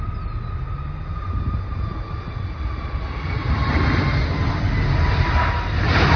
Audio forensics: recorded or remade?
recorded